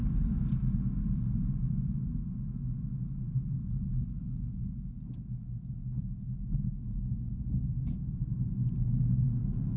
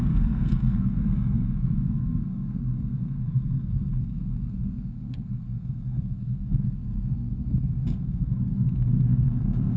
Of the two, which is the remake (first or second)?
second